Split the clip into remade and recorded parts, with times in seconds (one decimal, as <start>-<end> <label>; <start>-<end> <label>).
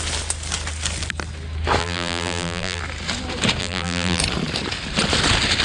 0.0-1.8 recorded; 1.8-2.8 remade; 2.8-3.6 recorded; 3.6-4.2 remade; 4.2-5.6 recorded